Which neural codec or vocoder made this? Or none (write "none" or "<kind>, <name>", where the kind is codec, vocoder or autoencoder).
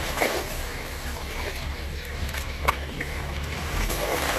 codec, DAC